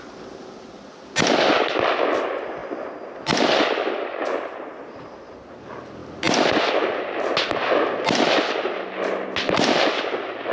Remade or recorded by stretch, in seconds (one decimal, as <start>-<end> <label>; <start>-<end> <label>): 0.0-10.5 recorded